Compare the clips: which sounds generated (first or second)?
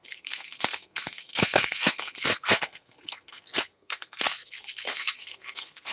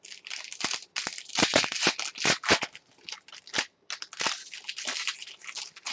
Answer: first